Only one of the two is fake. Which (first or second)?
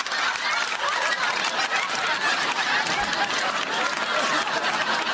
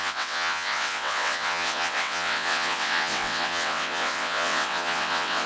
second